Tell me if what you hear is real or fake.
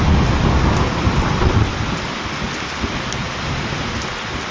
real